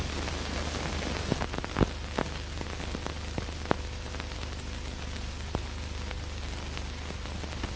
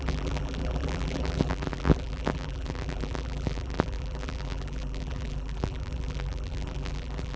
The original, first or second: first